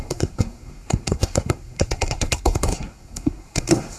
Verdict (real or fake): fake